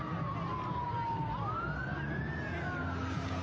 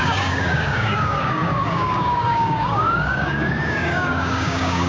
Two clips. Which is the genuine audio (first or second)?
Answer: first